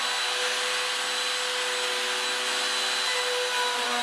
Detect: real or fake real